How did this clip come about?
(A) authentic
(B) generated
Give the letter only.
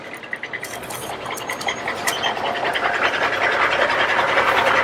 A